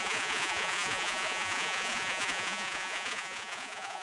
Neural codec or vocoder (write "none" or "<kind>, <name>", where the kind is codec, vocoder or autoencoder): vocoder, Vocos